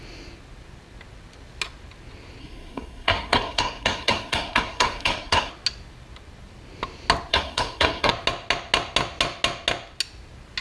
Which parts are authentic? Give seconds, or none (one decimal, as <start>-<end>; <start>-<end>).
0.0-2.4; 5.5-7.3; 8.1-10.6